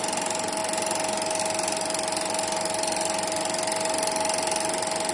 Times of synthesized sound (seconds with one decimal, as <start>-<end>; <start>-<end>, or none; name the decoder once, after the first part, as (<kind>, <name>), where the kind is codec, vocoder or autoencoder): none